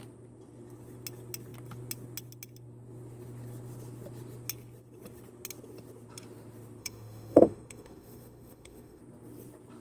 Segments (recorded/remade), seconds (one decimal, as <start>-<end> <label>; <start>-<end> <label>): 0.0-6.8 recorded; 6.8-9.0 remade; 9.0-9.8 recorded